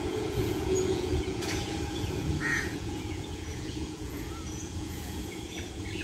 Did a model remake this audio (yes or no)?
yes